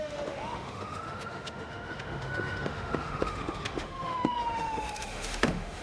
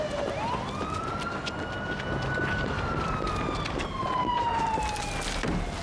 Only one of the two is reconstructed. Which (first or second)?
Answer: first